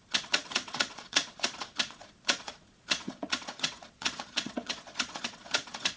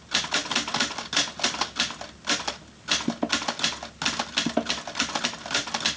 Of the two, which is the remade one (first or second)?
first